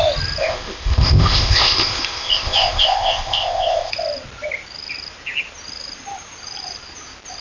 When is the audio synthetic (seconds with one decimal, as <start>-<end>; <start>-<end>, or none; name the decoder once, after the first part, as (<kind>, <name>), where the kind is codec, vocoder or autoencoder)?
0.4-3.9 (codec, ZipCodec)